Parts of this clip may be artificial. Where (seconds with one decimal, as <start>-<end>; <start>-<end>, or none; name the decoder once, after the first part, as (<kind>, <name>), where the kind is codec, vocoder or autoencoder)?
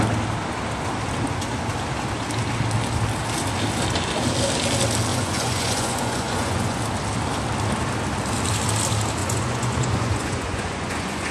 5.1-6.8 (vocoder, Vocos); 9.2-11.3